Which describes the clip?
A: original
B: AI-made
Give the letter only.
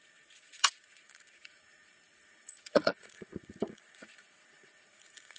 B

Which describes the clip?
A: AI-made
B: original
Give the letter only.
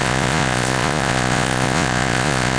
A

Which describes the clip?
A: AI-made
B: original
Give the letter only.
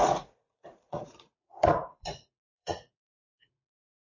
A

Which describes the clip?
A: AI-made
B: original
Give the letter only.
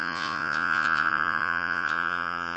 A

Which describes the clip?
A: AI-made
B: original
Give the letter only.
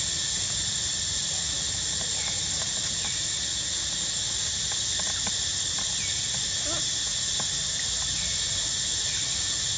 B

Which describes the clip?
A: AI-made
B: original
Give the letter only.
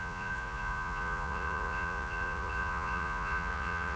A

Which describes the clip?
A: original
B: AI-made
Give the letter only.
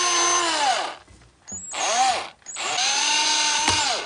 A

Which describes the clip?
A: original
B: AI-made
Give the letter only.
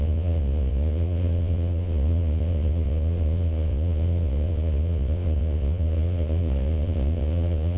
B